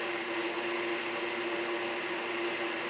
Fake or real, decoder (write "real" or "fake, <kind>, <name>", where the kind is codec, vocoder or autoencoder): real